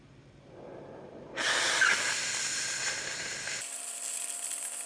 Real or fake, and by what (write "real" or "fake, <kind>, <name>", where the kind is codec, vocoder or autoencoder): real